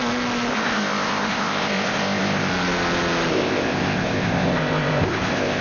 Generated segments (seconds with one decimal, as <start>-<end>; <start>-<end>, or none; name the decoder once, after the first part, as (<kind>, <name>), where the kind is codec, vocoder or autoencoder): 0.5-2.5 (codec, ZipCodec); 3.3-5.6